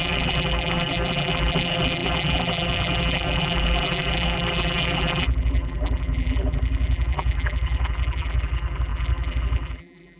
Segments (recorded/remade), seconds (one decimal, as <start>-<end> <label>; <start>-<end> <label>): 0.0-10.2 remade